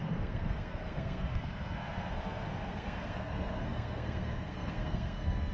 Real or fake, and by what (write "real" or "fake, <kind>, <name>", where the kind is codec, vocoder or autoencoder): fake, codec, SNAC